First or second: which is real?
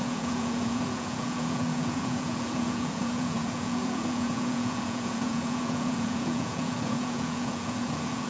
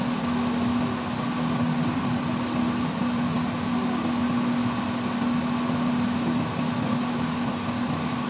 second